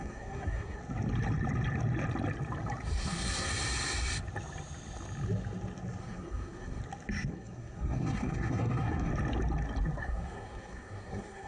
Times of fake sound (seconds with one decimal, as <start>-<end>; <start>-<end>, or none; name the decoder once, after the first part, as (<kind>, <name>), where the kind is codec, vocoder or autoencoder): 0.0-0.8 (codec, SNAC); 3.0-3.5; 6.0-6.8; 7.3-9.1; 10.0-11.5